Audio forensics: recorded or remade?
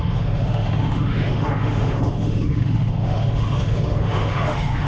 remade